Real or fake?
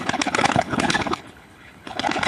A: fake